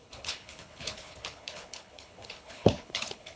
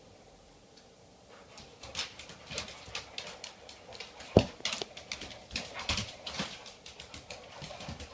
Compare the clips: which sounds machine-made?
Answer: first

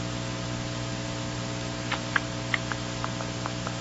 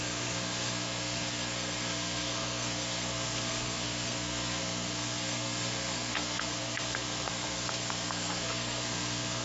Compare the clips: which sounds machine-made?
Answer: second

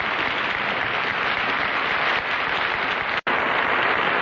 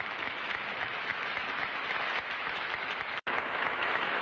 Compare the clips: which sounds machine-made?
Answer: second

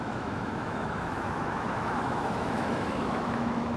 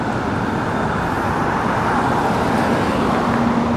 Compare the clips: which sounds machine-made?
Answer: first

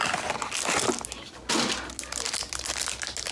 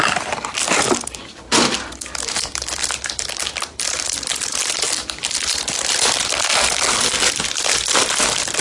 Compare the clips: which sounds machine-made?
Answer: second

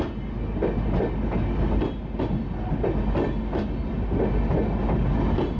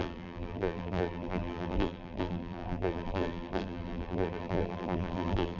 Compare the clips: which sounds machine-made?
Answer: second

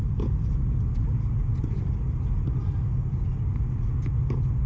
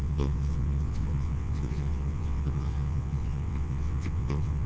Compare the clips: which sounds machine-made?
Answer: second